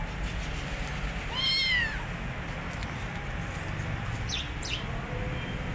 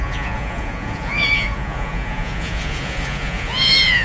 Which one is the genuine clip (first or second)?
first